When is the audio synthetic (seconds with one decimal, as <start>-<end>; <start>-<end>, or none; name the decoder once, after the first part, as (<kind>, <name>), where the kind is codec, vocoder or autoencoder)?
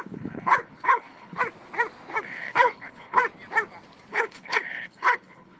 0.0-1.4 (codec, HILCodec); 2.2-3.2; 4.1-5.6